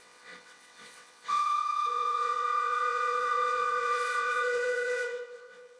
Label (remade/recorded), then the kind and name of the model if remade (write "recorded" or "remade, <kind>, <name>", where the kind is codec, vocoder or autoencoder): remade, vocoder, WaveNeXt